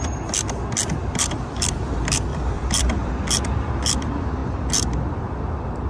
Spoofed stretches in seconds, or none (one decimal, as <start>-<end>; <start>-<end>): 1.0-1.8; 2.3-3.1